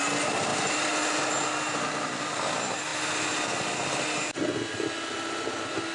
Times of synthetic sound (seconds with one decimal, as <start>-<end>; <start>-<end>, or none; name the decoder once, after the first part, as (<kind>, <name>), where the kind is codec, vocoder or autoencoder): none